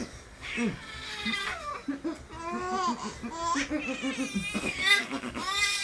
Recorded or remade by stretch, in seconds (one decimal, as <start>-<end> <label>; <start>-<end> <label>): 0.0-1.7 remade; 1.7-4.6 recorded; 4.6-5.8 remade